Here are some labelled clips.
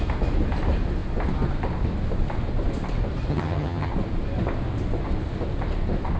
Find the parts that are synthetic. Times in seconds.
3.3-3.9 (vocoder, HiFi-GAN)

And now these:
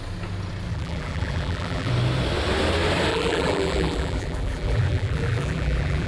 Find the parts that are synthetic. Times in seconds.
0.7-1.9 (vocoder, BigVGAN v2); 3.1-6.1

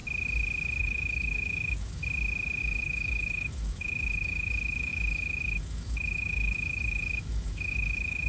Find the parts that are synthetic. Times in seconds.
0.8-2.0 (autoencoder, DAC-VAE); 2.6-8.3

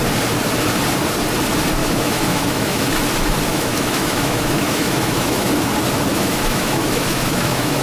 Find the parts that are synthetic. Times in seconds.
1.8-2.9 (autoencoder, DAC-VAE); 3.5-5.5; 6.1-7.8

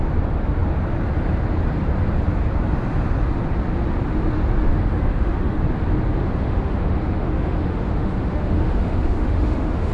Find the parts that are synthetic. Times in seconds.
4.7-5.6 (autoencoder, DAC-VAE); 6.2-9.9